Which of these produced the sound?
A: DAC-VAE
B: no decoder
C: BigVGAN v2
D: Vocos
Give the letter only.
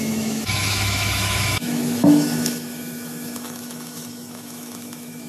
A